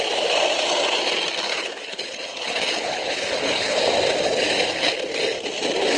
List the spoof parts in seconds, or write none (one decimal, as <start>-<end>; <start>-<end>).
1.5-3.8